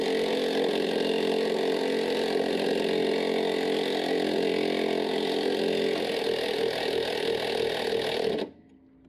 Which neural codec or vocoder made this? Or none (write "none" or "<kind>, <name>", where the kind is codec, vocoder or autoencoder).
none